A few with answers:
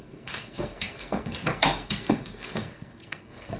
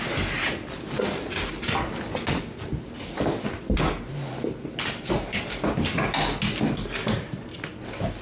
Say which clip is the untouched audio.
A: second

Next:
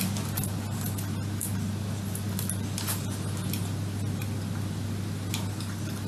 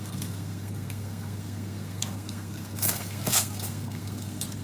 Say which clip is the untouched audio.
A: first